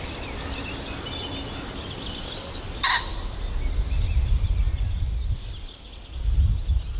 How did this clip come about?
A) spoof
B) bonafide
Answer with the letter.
B